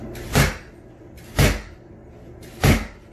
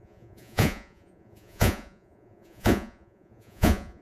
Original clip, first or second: first